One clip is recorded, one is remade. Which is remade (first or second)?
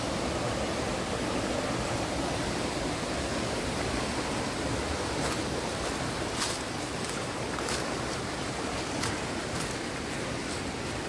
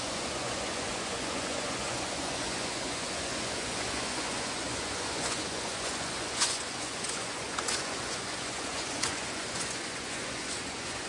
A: second